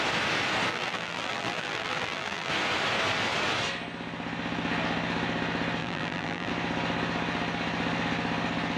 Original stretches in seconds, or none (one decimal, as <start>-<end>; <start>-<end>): 0.0-0.7; 2.5-5.8; 6.5-8.8